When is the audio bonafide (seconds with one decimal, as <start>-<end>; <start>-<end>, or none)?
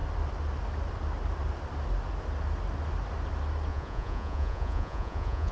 0.0-3.7